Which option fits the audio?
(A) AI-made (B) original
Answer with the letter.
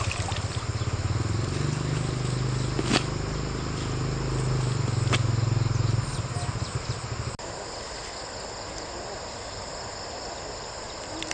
B